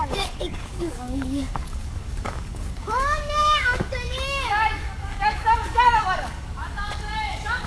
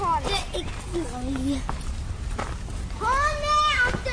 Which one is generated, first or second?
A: first